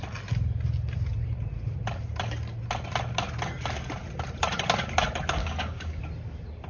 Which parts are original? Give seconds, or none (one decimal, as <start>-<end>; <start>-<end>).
0.0-5.4; 6.0-6.7